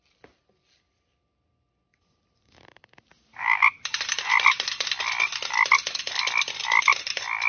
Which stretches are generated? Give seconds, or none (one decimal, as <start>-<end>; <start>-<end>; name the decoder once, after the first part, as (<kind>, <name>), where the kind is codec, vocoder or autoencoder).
1.9-4.3 (vocoder, BigVGAN v2)